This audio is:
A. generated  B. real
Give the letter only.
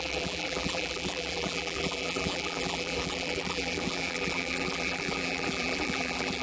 A